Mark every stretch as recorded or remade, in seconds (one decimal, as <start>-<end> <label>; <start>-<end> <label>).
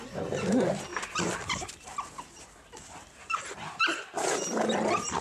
0.0-0.9 recorded; 0.9-2.2 remade; 2.2-5.2 recorded